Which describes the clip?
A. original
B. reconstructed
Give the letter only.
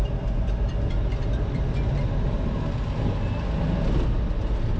A